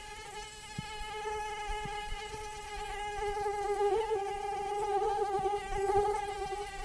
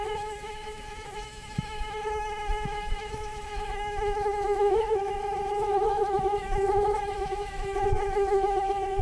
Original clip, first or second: first